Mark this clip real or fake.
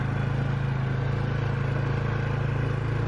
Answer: real